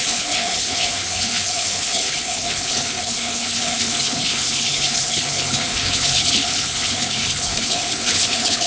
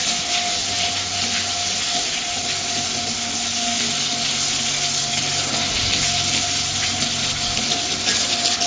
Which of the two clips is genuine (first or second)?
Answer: second